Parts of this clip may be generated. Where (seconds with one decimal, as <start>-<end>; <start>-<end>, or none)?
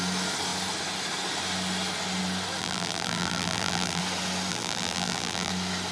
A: 2.6-4.0; 4.5-5.5